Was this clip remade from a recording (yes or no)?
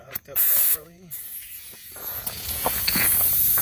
yes